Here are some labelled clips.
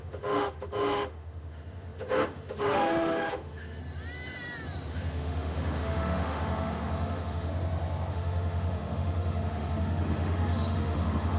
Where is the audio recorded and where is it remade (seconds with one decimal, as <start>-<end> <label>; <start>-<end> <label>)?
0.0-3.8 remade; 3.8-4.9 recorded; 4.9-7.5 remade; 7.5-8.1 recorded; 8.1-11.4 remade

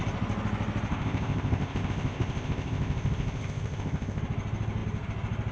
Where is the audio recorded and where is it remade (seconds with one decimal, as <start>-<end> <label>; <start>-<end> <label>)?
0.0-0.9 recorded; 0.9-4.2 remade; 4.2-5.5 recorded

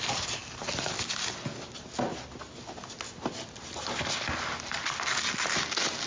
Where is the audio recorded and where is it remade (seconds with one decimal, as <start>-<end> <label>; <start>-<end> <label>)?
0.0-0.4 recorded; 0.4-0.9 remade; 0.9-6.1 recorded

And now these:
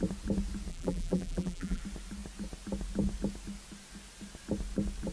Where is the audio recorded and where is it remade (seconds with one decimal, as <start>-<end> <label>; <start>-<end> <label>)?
0.0-0.7 recorded; 0.7-1.8 remade; 1.8-5.1 recorded

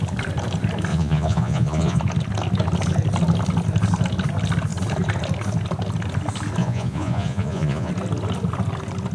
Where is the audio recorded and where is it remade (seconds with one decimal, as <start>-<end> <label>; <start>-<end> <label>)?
0.0-0.9 recorded; 0.9-2.0 remade; 2.0-6.6 recorded; 6.6-7.9 remade; 7.9-9.1 recorded